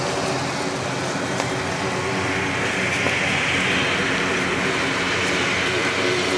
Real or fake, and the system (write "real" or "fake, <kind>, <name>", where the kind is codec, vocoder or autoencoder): real